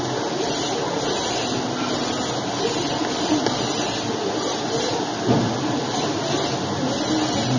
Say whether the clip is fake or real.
real